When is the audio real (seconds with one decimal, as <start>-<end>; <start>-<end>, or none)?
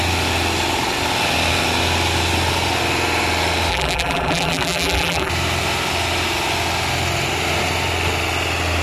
0.0-3.7; 5.3-8.8